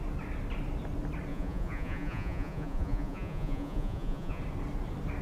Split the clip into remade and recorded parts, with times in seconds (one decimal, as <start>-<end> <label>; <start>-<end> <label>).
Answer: 0.0-1.3 recorded; 1.3-4.4 remade; 4.4-5.2 recorded